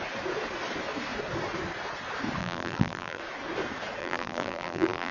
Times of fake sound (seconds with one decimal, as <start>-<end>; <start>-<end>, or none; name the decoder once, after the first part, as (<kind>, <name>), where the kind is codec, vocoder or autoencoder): 2.4-3.2 (vocoder, BigVGAN v2); 4.0-5.1